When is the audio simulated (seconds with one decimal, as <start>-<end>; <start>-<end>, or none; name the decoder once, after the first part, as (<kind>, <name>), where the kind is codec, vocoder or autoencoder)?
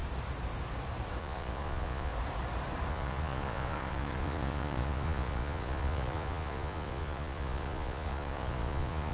1.2-2.1 (vocoder, Vocos); 2.9-9.1